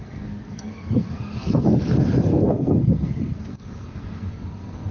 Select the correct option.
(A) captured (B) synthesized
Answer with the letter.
B